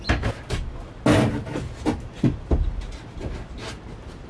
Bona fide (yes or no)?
yes